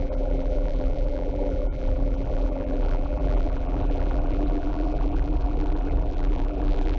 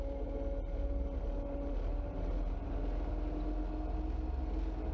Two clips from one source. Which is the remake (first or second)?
first